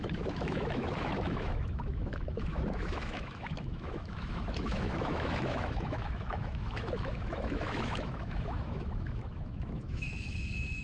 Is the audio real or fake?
fake